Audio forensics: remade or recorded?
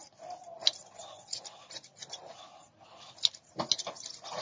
recorded